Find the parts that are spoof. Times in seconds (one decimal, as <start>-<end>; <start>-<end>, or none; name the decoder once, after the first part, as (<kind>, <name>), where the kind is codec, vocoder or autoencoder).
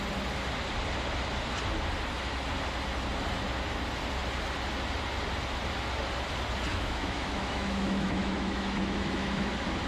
6.7-9.5 (autoencoder, DAC-VAE)